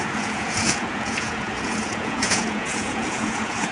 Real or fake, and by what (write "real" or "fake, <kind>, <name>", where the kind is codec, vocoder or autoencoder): fake, vocoder, Vocos